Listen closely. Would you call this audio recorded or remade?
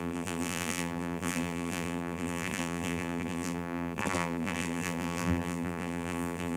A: remade